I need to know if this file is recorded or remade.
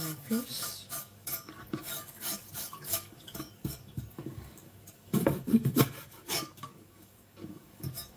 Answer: remade